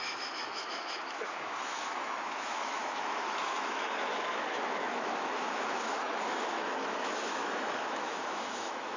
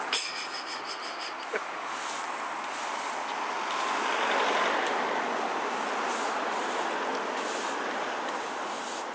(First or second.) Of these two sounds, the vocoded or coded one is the first